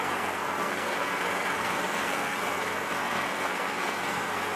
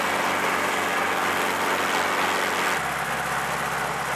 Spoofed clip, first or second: first